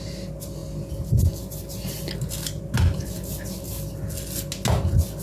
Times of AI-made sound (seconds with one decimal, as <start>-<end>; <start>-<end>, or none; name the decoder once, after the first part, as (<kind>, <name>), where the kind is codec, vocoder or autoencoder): none